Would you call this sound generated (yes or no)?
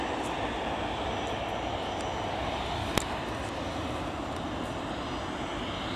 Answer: no